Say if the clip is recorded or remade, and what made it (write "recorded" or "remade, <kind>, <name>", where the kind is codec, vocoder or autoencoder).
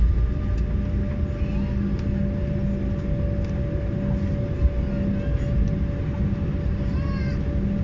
recorded